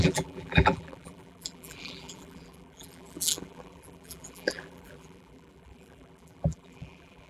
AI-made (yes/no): yes